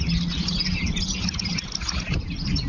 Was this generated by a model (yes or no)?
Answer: no